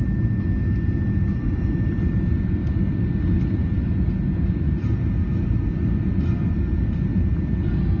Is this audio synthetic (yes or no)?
no